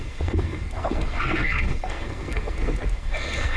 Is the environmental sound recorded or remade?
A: remade